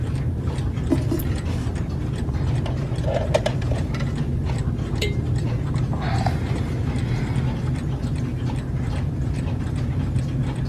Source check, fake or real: real